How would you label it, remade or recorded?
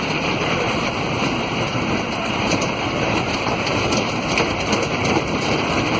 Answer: remade